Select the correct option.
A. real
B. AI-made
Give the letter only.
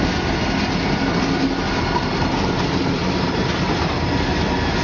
A